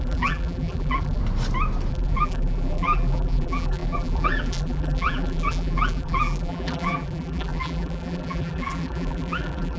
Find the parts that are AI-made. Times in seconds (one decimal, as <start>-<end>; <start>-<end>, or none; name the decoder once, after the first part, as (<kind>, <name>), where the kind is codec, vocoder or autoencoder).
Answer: 0.0-1.2 (vocoder, BigVGAN v2); 1.9-9.8